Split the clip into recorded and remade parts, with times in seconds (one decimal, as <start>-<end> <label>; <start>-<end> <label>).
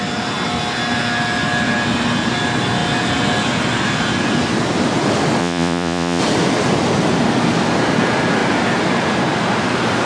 0.0-5.4 recorded; 5.4-6.2 remade; 6.2-10.1 recorded